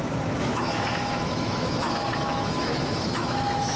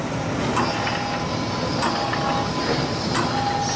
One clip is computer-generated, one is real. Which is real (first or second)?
second